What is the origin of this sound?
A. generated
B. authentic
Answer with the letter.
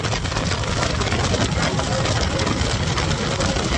B